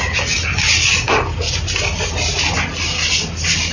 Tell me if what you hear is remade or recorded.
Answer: recorded